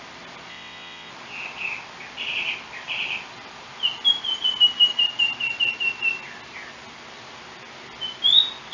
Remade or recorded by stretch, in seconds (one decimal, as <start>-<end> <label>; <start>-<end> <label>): 0.0-0.5 recorded; 0.5-1.1 remade; 1.1-8.7 recorded